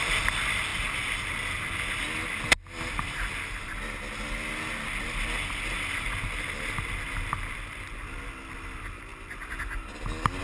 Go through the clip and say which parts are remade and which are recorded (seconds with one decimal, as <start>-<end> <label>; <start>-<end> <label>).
0.0-10.4 recorded